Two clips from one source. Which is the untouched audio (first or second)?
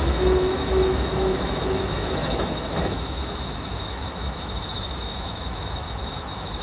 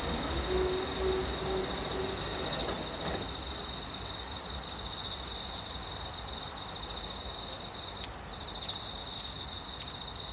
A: second